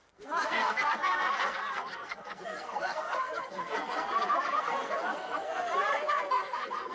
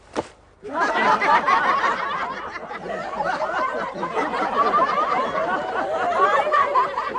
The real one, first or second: second